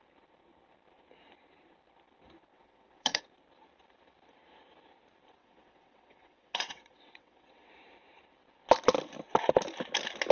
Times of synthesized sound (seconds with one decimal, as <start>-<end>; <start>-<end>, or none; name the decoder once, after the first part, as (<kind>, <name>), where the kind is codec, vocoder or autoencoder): 2.5-3.2 (vocoder, WaveNeXt); 5.4-7.7